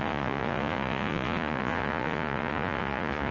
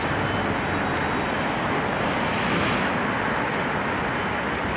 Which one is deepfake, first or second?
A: first